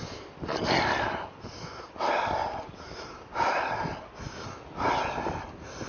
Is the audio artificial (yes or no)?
no